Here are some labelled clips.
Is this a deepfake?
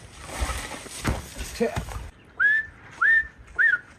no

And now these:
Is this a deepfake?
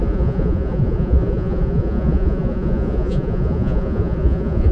yes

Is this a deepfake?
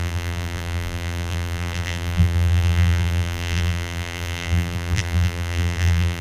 yes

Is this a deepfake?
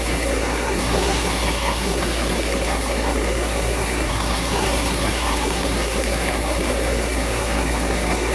yes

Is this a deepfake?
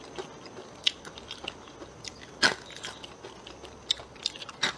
no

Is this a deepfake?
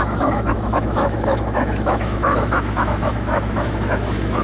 yes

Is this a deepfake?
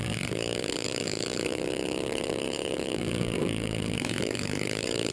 yes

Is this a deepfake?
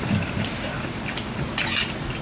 no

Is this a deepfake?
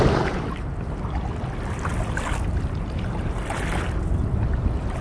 no